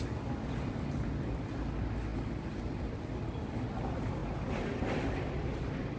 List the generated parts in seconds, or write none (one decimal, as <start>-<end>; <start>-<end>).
none

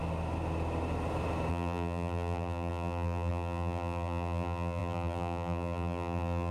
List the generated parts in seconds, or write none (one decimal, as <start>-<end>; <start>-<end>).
1.5-6.5

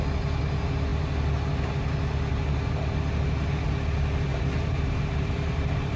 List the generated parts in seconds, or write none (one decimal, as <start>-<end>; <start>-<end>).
4.3-6.0

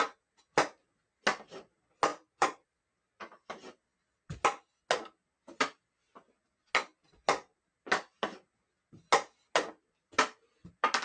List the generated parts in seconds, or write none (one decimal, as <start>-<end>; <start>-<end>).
2.1-2.8

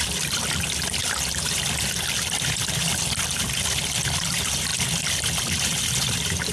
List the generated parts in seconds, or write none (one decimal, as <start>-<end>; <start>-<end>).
0.0-4.7; 5.4-6.5